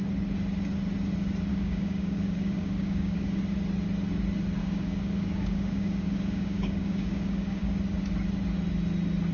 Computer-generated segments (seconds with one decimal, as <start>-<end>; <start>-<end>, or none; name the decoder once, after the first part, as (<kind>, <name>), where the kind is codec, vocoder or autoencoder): 1.5-3.4 (codec, DAC); 4.6-7.6